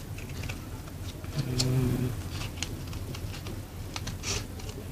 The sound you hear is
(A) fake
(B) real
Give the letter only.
B